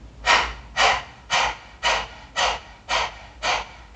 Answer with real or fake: real